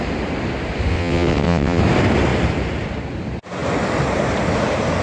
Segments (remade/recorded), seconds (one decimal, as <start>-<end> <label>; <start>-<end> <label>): 0.0-0.9 recorded; 0.9-1.8 remade; 1.8-5.0 recorded